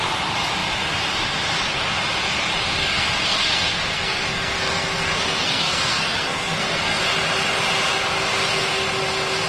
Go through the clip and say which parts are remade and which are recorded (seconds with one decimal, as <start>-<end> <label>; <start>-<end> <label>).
0.0-2.8 recorded; 2.8-7.0 remade; 7.0-9.5 recorded